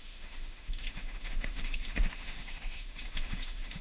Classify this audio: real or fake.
fake